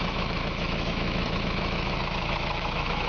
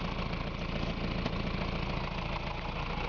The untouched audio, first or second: second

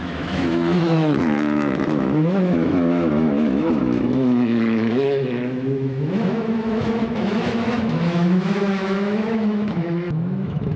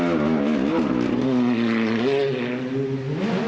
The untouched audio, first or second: second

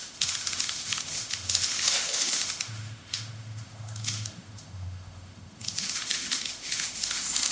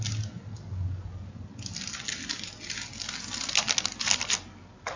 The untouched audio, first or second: second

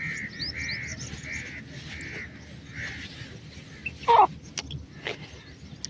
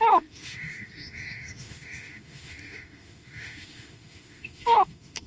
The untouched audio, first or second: first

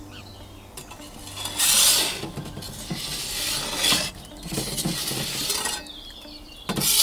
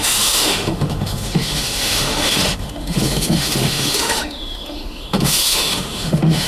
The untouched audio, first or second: first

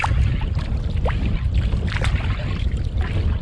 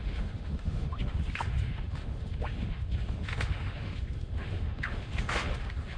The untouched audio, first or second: first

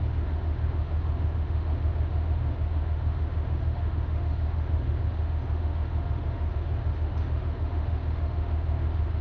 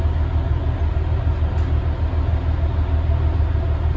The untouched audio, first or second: second